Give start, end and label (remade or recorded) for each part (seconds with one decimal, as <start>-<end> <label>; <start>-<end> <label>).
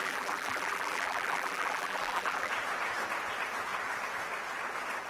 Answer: 0.0-2.5 remade; 2.5-5.1 recorded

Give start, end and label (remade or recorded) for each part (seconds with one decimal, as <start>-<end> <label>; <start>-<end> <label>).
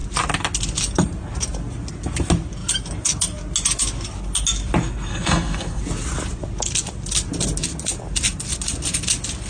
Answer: 0.0-5.1 recorded; 5.1-5.8 remade; 5.8-9.5 recorded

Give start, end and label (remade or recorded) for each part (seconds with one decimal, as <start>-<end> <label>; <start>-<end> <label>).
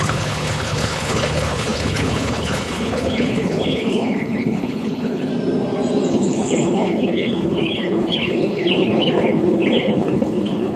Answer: 0.0-5.3 remade; 5.3-6.1 recorded; 6.1-10.8 remade